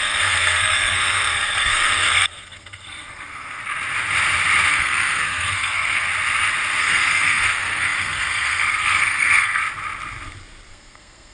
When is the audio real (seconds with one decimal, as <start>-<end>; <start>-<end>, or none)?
3.6-4.7; 6.1-6.8; 9.6-10.7